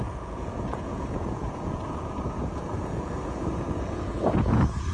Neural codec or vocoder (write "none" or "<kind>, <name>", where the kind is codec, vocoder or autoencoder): vocoder, Vocos